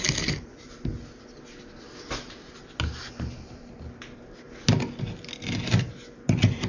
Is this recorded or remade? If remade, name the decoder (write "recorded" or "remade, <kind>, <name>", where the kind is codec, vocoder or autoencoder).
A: recorded